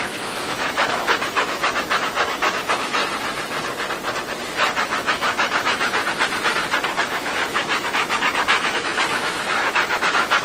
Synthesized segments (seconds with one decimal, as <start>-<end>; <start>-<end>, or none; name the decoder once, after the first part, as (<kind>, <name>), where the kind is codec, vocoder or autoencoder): 0.0-3.0 (autoencoder, DAC-VAE); 4.8-6.0; 7.0-10.4